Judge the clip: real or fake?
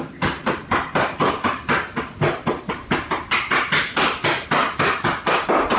real